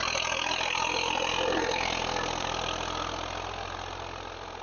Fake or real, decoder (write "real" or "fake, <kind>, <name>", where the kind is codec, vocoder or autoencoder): real